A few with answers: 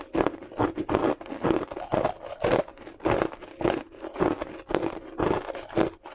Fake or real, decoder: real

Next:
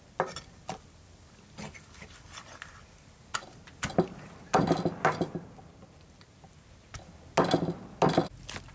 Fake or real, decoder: real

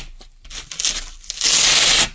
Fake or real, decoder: real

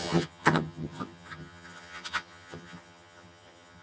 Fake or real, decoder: fake, vocoder, HiFi-GAN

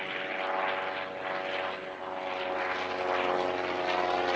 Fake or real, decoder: real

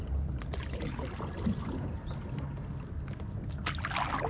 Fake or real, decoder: real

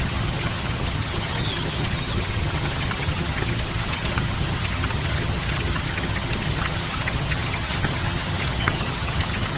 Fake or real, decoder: fake, vocoder, HiFi-GAN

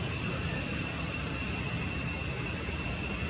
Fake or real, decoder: real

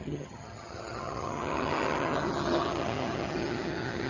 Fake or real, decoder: fake, vocoder, HiFi-GAN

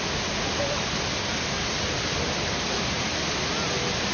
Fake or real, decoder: real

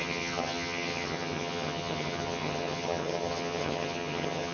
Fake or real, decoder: fake, vocoder, HiFi-GAN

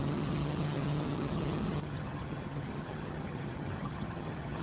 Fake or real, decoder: fake, vocoder, HiFi-GAN